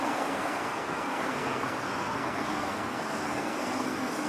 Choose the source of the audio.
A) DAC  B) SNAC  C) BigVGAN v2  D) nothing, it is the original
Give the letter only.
B